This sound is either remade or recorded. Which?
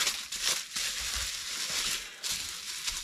recorded